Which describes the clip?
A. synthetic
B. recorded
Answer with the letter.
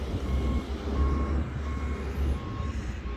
B